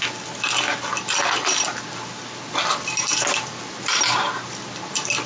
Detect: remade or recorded recorded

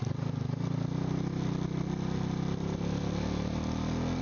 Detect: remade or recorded recorded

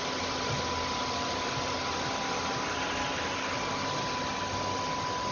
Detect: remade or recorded recorded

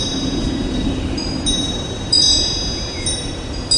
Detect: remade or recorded recorded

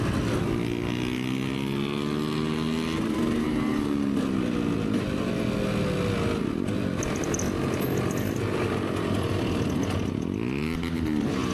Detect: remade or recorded recorded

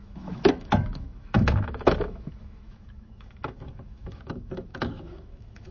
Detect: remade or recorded remade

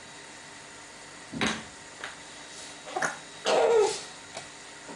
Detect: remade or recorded recorded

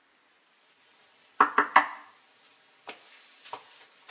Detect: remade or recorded recorded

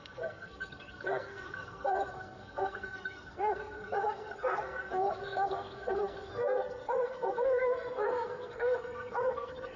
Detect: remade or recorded remade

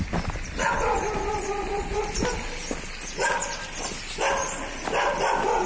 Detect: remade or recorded recorded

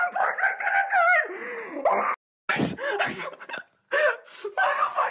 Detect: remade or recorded recorded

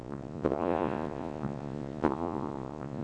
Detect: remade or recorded remade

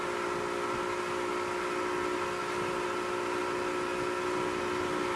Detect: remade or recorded recorded